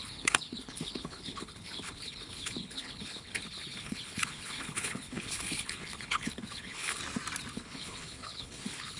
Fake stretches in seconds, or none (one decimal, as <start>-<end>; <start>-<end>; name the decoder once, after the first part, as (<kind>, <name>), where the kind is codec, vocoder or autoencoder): 0.0-7.0 (codec, HILCodec); 7.5-9.0